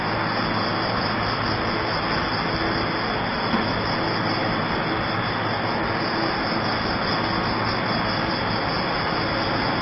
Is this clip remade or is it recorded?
recorded